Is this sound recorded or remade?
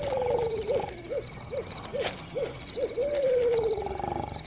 recorded